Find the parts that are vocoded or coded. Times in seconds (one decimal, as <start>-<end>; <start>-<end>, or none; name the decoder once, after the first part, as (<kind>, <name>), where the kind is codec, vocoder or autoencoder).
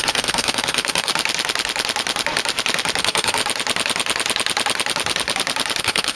0.0-1.1 (codec, SNAC); 3.0-3.4; 5.8-6.2